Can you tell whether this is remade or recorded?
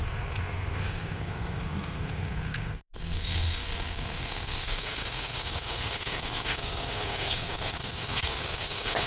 remade